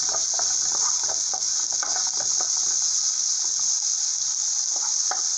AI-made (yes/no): no